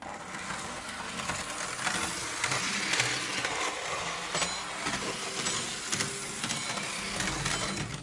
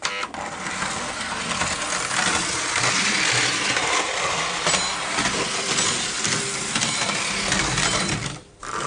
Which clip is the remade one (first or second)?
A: second